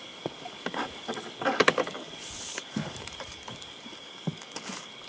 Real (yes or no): no